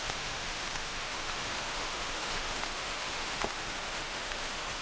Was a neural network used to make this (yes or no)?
yes